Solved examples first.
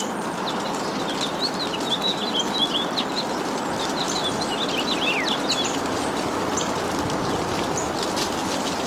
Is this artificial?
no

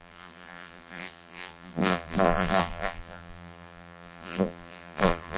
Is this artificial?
yes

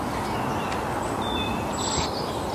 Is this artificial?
no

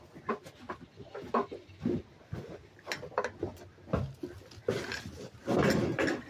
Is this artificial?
no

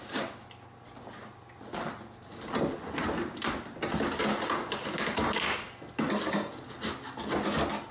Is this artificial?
no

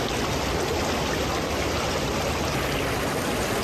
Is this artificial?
no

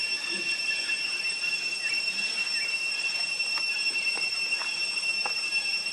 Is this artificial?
yes